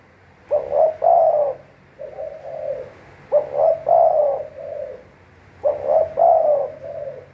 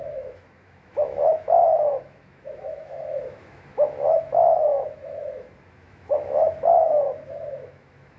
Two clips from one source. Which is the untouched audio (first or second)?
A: first